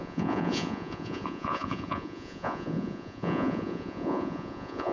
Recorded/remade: remade